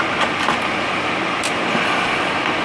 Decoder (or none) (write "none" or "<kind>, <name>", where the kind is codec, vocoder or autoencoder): none